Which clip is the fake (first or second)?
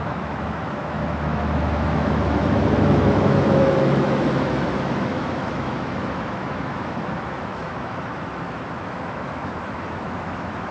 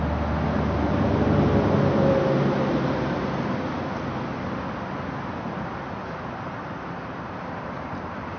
first